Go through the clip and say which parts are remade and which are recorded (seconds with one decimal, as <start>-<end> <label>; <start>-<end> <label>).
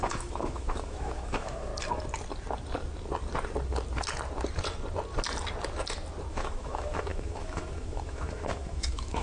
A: 0.0-1.7 remade; 1.7-6.3 recorded; 6.3-9.2 remade